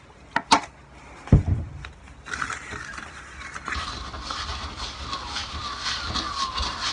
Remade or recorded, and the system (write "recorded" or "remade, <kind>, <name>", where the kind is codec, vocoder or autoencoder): recorded